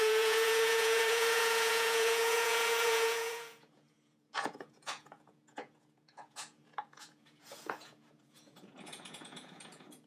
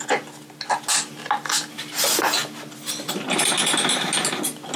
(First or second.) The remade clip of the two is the first